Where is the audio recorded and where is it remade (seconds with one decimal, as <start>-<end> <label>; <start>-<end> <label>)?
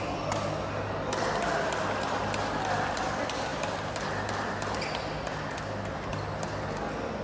0.0-7.2 recorded